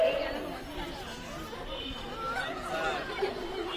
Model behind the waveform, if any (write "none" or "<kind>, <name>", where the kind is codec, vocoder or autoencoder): none